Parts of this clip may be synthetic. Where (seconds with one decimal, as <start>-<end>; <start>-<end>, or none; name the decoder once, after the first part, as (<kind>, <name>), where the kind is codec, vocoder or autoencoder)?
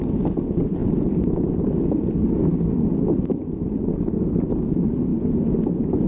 0.8-3.5 (vocoder, BigVGAN v2)